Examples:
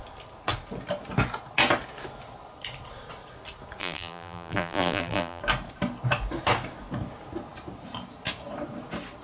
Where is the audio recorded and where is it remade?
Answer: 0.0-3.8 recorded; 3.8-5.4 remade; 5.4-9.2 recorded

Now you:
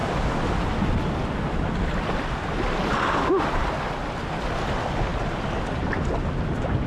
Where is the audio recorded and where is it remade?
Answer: 0.0-6.9 recorded

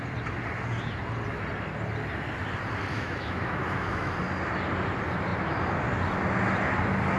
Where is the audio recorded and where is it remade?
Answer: 0.0-2.9 recorded; 2.9-4.1 remade; 4.1-7.2 recorded

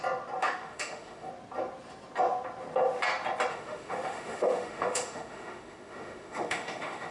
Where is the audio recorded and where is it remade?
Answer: 0.0-0.4 recorded; 0.4-1.3 remade; 1.3-3.5 recorded; 3.5-7.1 remade

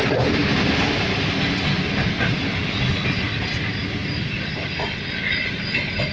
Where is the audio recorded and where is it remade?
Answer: 0.0-6.1 recorded

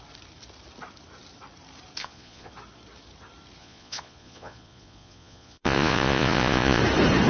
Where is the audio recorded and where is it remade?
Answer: 0.0-2.0 recorded; 2.0-2.5 remade; 2.5-3.6 recorded; 3.6-6.8 remade; 6.8-7.3 recorded